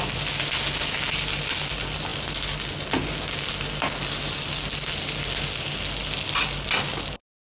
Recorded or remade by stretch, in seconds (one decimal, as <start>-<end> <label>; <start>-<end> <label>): 0.0-7.5 recorded